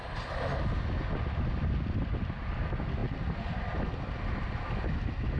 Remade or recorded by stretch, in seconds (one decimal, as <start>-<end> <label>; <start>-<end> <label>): 0.0-5.4 recorded